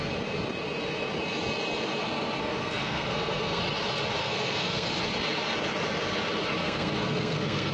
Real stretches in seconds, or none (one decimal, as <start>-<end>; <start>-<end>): 0.0-2.4; 3.6-4.2; 4.9-6.6